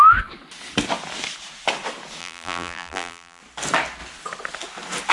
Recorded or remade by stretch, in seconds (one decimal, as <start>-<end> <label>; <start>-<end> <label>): 0.0-2.2 recorded; 2.2-3.4 remade; 3.4-5.1 recorded